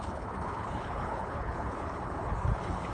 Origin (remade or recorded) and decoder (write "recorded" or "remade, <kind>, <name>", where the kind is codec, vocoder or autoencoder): remade, codec, HILCodec